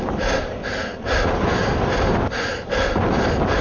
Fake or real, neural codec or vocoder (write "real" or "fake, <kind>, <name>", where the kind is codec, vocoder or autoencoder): real